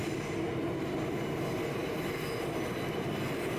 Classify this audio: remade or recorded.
recorded